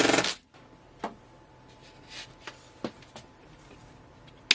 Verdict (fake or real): real